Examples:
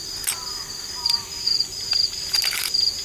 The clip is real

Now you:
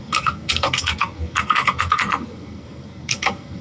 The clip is fake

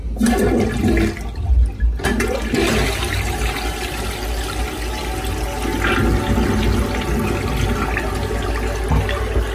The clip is real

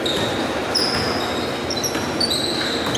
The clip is real